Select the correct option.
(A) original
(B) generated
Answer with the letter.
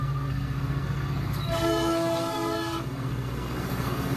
B